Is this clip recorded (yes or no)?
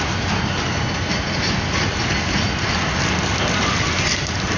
yes